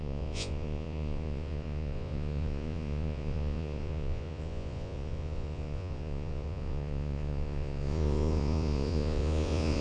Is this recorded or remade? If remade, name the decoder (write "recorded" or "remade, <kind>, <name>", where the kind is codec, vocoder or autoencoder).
remade, vocoder, Vocos